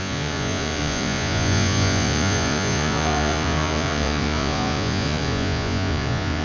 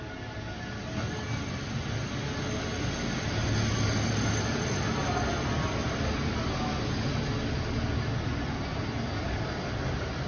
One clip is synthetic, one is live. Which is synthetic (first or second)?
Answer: first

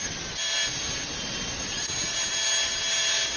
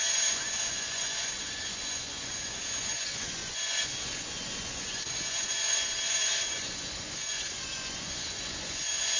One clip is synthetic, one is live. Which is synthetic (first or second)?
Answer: second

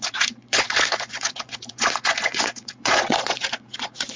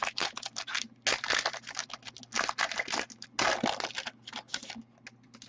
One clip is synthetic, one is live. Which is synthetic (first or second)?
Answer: first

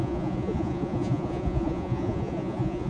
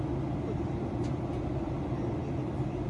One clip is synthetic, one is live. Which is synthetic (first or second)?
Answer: first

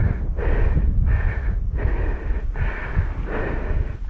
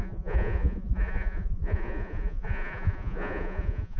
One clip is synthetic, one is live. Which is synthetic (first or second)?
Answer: second